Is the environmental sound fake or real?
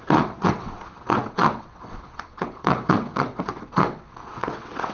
fake